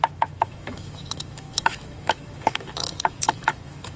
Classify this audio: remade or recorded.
remade